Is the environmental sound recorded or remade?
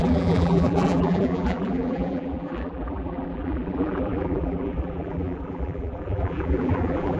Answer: remade